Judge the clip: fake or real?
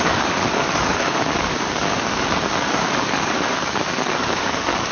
fake